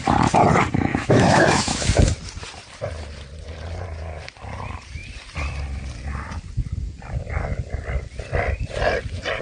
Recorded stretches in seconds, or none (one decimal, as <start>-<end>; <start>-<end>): 0.0-0.9; 2.0-9.4